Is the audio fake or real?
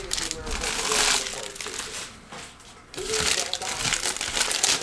real